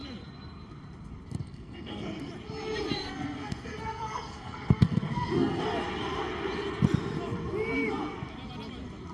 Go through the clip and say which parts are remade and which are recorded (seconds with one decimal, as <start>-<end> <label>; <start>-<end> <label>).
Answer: 0.0-1.4 recorded; 1.4-2.3 remade; 2.3-3.0 recorded; 3.0-5.6 remade; 5.6-9.1 recorded